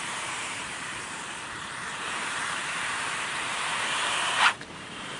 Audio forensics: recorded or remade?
remade